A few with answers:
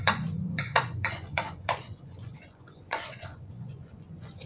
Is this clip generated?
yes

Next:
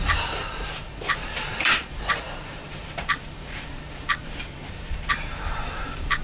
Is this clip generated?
yes